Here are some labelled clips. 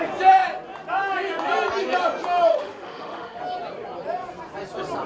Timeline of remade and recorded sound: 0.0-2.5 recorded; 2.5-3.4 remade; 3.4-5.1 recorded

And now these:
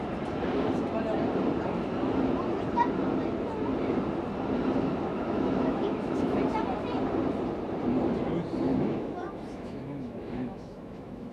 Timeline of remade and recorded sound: 0.0-5.1 recorded; 5.1-6.4 remade; 6.4-8.7 recorded; 8.7-11.3 remade